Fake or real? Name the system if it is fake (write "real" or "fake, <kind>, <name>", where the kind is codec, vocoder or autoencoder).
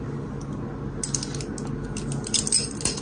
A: real